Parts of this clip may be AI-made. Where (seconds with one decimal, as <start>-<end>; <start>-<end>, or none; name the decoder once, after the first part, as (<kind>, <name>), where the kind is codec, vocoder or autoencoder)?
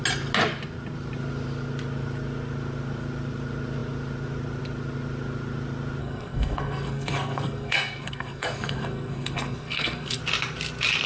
6.0-10.2 (codec, SNAC)